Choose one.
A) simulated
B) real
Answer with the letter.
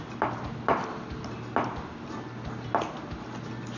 B